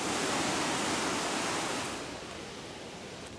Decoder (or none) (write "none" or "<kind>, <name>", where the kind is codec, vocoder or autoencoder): none